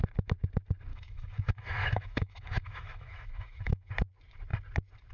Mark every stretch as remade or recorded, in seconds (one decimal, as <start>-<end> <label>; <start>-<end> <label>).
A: 0.0-0.9 recorded; 0.9-3.9 remade; 3.9-5.1 recorded